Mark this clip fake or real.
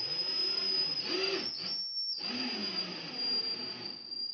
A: real